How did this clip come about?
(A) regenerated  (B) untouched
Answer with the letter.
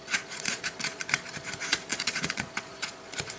A